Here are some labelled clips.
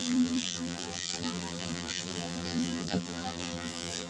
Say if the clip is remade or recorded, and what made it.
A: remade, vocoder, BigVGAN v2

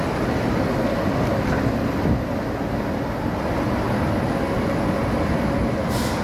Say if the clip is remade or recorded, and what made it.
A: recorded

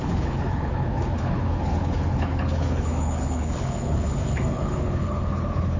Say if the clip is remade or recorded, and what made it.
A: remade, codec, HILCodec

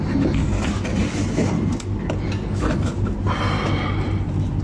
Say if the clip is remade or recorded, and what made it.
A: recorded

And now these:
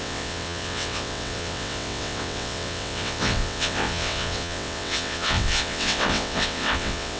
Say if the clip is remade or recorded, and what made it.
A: remade, vocoder, WaveNeXt